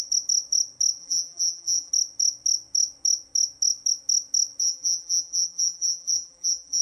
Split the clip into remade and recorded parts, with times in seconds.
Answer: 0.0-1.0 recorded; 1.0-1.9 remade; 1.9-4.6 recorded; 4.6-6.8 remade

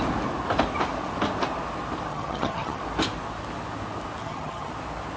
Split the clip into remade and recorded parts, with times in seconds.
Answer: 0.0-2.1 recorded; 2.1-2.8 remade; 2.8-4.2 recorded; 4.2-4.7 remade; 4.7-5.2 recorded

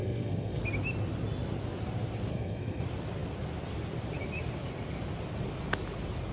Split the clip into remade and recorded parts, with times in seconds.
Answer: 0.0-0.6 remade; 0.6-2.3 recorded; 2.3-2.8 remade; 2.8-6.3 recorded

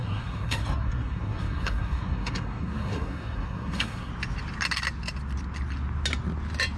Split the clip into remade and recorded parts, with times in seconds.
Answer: 0.0-4.1 remade; 4.1-6.8 recorded